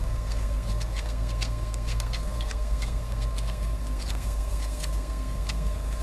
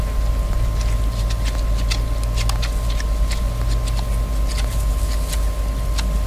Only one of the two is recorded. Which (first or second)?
second